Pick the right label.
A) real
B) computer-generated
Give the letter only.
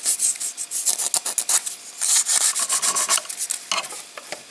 A